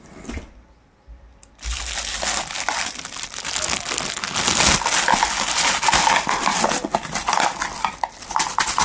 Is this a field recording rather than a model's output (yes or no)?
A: yes